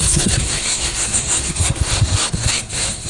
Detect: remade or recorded remade